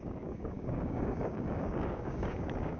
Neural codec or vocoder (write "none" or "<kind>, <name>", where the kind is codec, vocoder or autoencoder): codec, DAC